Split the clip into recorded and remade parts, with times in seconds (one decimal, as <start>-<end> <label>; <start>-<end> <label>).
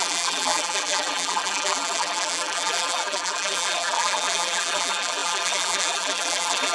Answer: 0.0-6.7 remade